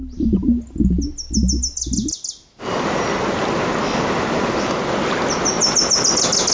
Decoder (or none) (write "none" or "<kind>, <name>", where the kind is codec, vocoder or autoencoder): none